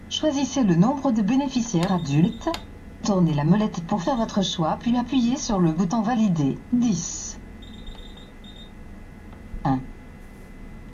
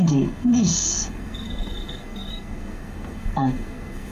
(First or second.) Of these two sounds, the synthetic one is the second